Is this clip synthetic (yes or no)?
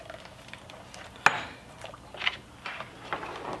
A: no